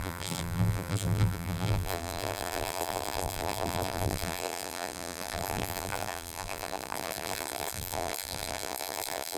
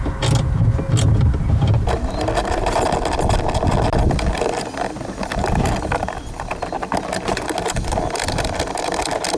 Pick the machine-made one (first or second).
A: first